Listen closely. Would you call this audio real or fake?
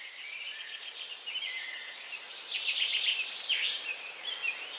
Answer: fake